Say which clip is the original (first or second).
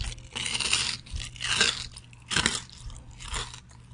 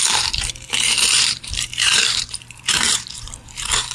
first